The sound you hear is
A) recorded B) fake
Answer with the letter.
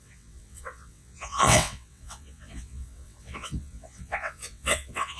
B